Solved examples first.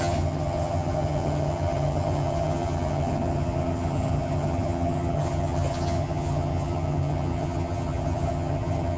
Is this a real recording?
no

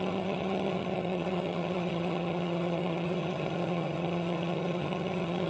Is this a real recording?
no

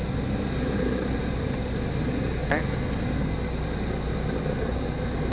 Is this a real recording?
yes